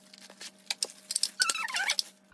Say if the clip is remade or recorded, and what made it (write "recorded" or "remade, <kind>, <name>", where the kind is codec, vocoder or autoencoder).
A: recorded